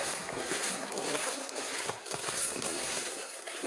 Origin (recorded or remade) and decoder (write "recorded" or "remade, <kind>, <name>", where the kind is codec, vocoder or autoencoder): remade, codec, SNAC